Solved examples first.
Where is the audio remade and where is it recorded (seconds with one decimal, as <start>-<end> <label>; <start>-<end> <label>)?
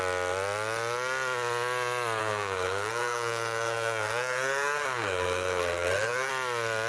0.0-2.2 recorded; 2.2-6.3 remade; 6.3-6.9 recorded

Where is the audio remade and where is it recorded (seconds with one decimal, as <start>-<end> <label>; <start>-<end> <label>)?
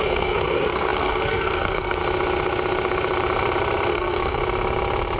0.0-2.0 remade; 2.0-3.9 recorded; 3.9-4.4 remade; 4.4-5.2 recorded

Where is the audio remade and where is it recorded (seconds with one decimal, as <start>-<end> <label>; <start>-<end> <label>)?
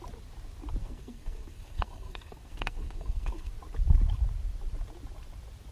0.0-0.8 recorded; 0.8-3.5 remade; 3.5-5.7 recorded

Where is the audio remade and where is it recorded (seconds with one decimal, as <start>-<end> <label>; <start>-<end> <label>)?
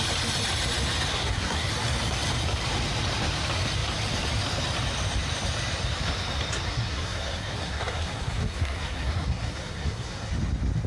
0.0-1.1 recorded; 1.1-1.7 remade; 1.7-6.7 recorded; 6.7-10.3 remade; 10.3-10.9 recorded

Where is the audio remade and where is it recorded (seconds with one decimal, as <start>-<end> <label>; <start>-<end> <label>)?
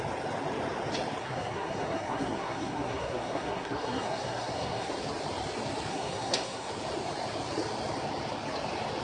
0.0-1.2 recorded; 1.2-4.9 remade; 4.9-5.9 recorded; 5.9-6.7 remade; 6.7-9.0 recorded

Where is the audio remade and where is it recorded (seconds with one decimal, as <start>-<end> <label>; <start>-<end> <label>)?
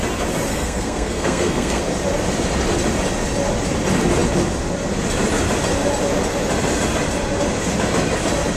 0.0-0.5 recorded; 0.5-1.8 remade; 1.8-8.6 recorded